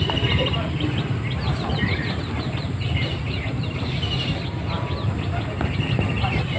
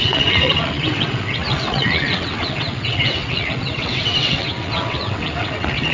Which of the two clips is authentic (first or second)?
first